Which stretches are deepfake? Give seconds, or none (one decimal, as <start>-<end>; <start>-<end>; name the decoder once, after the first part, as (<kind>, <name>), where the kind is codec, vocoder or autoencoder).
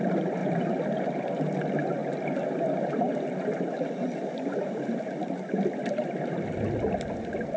none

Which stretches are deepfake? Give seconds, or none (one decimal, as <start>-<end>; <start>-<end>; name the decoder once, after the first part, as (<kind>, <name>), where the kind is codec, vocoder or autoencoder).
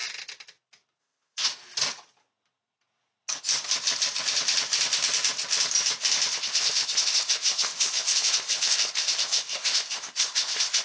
1.0-1.5 (codec, ZipCodec); 6.3-10.8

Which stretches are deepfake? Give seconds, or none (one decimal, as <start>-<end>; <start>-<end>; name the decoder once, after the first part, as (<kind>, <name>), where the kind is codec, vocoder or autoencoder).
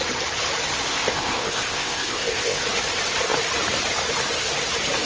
0.9-2.6 (codec, ZipCodec)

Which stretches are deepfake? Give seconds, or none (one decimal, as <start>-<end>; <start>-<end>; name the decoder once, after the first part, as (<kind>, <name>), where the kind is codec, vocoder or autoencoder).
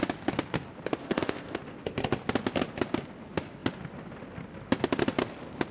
1.0-1.6 (codec, ZipCodec)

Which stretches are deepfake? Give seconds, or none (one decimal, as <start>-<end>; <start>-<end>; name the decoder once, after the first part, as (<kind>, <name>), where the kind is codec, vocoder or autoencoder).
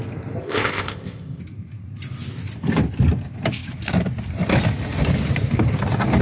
0.4-1.4 (codec, ZipCodec)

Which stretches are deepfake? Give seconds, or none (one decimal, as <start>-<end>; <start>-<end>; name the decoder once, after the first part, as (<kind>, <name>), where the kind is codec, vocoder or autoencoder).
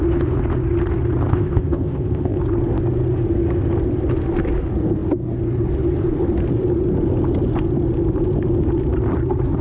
1.3-2.4 (codec, ZipCodec)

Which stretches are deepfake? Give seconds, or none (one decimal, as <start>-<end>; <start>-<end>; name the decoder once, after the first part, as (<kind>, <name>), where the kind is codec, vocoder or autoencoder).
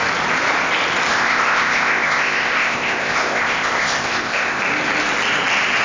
1.1-4.6 (codec, ZipCodec)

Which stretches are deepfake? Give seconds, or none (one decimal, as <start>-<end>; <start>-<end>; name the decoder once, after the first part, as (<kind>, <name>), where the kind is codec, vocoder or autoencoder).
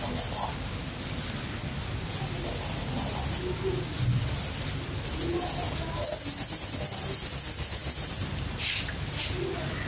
none